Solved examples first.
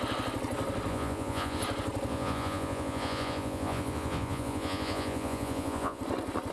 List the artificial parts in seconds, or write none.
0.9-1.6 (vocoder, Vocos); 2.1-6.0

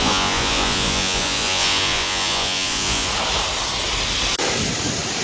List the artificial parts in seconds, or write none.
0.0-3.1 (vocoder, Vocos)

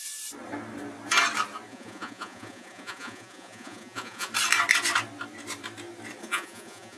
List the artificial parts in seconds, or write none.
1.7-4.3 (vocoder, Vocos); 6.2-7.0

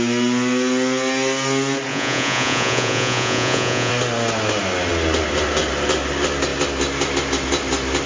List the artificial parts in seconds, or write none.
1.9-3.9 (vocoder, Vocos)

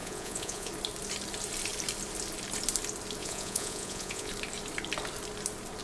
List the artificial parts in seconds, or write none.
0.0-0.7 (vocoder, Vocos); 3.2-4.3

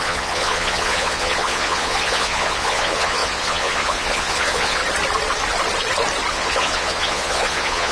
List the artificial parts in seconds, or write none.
0.0-4.8 (vocoder, Vocos); 6.3-7.9

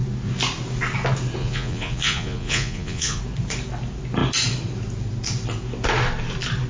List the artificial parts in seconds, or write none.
1.4-3.2 (vocoder, Vocos)

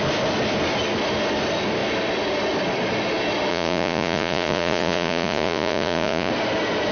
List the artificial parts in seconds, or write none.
3.5-6.3 (vocoder, Vocos)